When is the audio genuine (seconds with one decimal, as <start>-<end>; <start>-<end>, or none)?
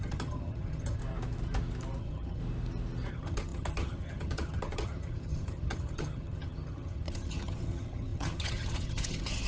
1.0-2.0; 2.4-3.1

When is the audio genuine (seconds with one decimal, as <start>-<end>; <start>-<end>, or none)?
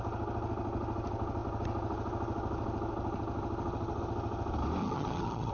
0.0-4.8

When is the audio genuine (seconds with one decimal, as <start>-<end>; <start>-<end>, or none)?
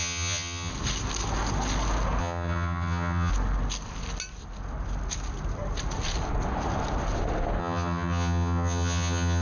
0.7-2.2; 3.3-7.6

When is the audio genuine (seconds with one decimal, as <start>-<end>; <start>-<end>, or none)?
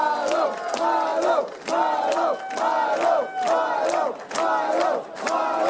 0.0-5.7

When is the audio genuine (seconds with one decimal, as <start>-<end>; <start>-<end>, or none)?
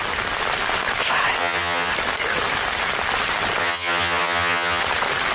0.0-1.4; 1.9-3.6; 4.8-5.3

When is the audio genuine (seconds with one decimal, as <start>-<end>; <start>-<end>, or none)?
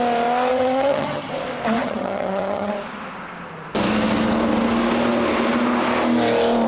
0.0-0.5; 1.3-1.8; 2.7-6.7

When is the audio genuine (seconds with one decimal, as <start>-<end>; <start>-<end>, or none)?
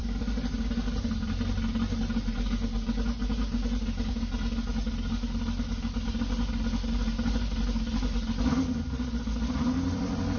0.0-10.4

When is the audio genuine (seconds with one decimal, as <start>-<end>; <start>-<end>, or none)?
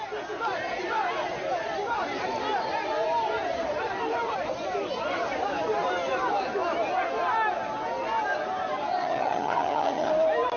0.0-9.0; 10.1-10.6